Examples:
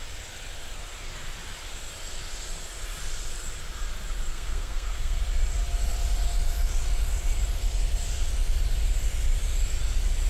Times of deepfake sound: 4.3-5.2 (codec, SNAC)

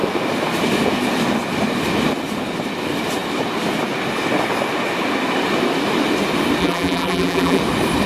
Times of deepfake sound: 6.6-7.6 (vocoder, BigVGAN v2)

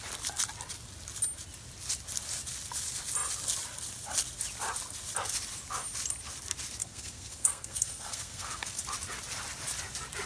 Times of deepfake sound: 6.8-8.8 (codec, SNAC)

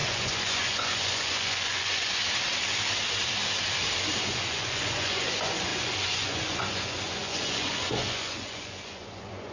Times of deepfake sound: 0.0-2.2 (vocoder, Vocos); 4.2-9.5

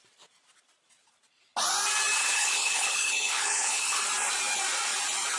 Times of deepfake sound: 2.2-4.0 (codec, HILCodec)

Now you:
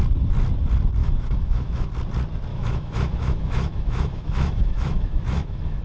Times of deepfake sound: 1.0-1.9 (autoencoder, DAC-VAE); 2.5-5.8

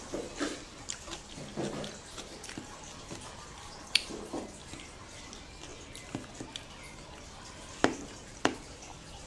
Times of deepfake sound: 1.5-4.4 (vocoder, BigVGAN v2)

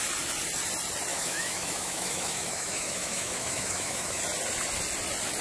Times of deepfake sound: 1.1-4.2 (autoencoder, DAC-VAE)